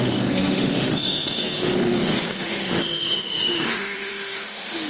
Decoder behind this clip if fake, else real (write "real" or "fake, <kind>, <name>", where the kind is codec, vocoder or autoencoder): fake, autoencoder, DAC-VAE